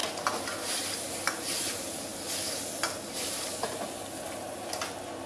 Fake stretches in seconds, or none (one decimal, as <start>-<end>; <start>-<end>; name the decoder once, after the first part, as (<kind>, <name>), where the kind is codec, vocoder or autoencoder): none